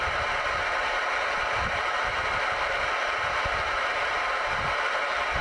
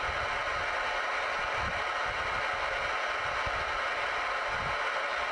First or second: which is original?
second